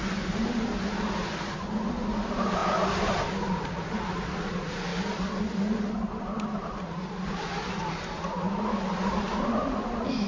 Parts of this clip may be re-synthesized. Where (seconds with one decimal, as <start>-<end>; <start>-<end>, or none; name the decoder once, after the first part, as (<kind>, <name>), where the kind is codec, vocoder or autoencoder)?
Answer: none